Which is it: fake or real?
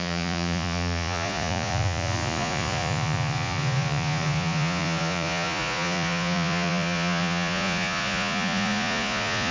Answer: fake